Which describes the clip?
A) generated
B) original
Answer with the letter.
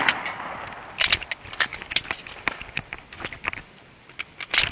B